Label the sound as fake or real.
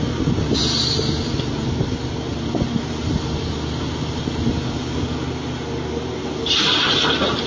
real